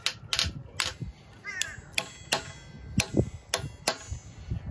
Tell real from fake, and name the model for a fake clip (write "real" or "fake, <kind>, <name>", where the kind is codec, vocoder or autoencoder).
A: real